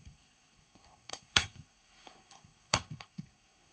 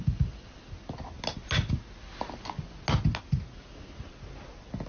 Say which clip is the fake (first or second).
first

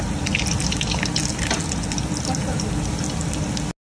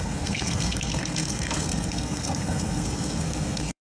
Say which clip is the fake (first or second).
second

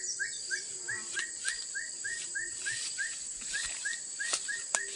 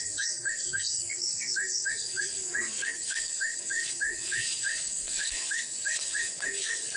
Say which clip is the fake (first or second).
second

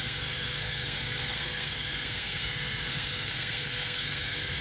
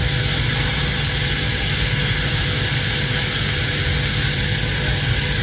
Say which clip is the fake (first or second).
first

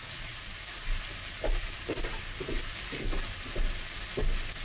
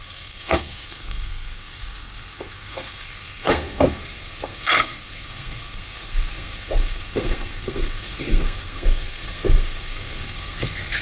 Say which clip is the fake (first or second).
second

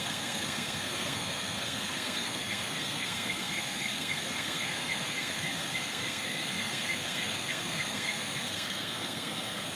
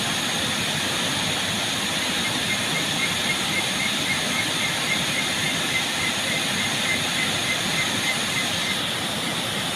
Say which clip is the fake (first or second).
first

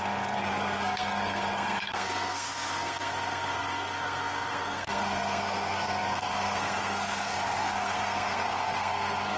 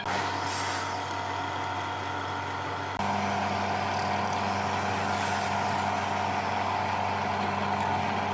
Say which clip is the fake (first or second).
first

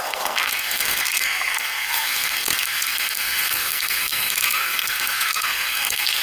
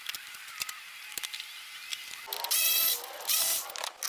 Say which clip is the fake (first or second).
first